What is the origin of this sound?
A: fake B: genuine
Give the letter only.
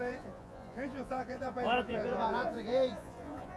A